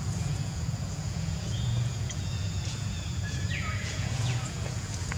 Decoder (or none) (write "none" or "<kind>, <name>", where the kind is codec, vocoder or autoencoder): vocoder, Vocos